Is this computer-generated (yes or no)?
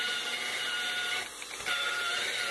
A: no